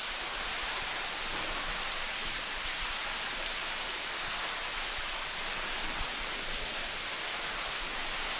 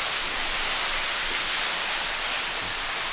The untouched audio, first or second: second